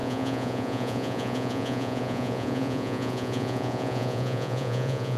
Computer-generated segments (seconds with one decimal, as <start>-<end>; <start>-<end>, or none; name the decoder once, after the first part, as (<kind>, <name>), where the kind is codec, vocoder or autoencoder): 0.0-5.2 (vocoder, Vocos)